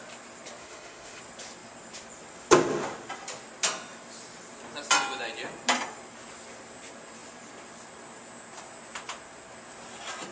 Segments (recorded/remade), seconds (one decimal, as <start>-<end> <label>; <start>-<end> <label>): 0.0-0.6 recorded; 0.6-1.2 remade; 1.2-10.3 recorded

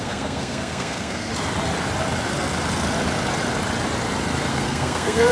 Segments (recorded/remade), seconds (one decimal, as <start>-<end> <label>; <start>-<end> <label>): 0.0-1.3 remade; 1.3-4.5 recorded; 4.5-5.3 remade

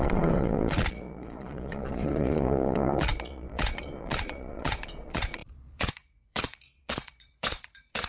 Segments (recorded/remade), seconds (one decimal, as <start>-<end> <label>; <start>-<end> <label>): 0.0-8.1 remade